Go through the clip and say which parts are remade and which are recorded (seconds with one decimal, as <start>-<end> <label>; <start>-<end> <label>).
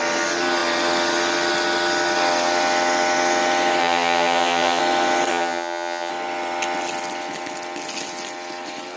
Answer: 0.0-3.8 recorded; 3.8-4.8 remade; 4.8-5.3 recorded; 5.3-6.1 remade; 6.1-9.0 recorded